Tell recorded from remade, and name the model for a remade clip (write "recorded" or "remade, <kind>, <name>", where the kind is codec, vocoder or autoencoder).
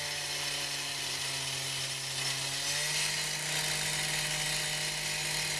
recorded